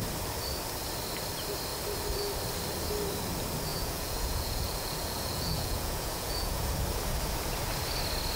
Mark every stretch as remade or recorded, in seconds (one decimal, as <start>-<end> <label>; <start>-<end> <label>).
0.0-3.7 recorded; 3.7-6.7 remade; 6.7-8.4 recorded